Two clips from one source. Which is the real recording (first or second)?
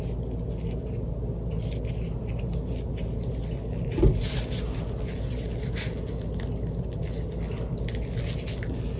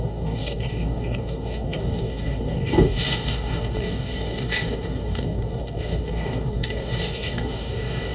first